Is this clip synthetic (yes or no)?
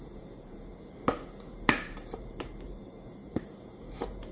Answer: yes